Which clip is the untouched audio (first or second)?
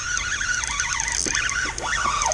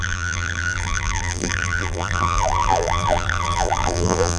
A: first